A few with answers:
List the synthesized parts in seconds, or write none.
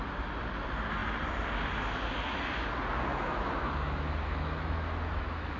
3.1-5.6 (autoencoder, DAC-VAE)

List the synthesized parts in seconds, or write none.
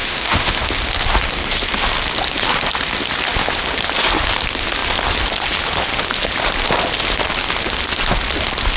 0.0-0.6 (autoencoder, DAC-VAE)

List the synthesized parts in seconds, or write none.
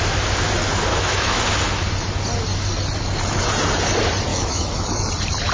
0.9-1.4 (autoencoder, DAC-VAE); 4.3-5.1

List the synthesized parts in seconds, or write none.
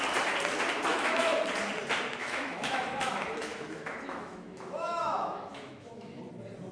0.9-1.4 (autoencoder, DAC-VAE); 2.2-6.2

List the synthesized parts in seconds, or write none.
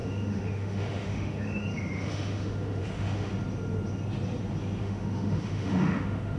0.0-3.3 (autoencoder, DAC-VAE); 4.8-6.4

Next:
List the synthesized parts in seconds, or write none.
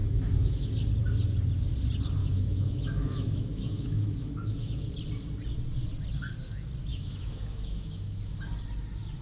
0.0-0.7 (autoencoder, DAC-VAE); 2.2-4.9; 6.9-8.3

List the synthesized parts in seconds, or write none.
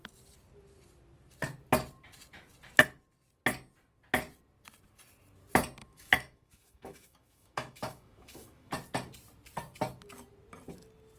5.8-8.7 (autoencoder, DAC-VAE)